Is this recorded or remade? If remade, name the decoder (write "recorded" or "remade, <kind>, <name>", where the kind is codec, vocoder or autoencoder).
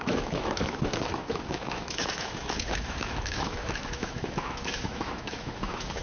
remade, autoencoder, DAC-VAE